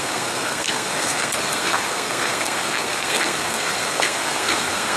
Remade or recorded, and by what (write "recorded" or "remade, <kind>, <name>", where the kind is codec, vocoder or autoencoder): remade, codec, SNAC